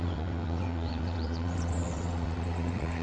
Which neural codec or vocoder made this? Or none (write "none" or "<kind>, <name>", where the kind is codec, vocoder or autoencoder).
vocoder, WaveNeXt